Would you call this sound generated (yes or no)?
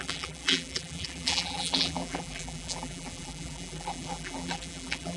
yes